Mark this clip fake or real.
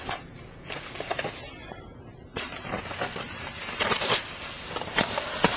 fake